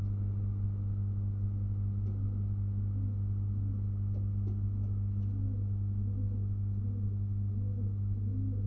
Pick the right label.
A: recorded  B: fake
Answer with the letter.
A